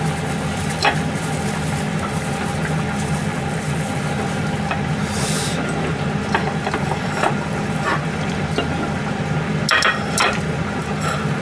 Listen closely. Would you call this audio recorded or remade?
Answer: remade